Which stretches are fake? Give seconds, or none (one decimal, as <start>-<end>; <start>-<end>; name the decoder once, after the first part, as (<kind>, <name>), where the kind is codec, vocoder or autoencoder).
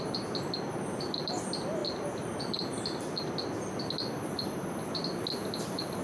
none